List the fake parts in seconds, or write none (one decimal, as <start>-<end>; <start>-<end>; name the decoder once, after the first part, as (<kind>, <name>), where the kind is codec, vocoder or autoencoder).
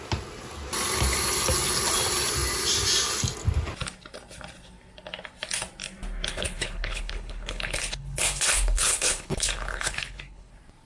6.3-10.5 (codec, HILCodec)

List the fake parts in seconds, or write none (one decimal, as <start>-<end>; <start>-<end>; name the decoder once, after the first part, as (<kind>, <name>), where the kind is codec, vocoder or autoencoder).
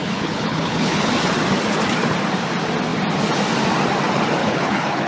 0.0-1.1 (codec, HILCodec); 4.4-5.1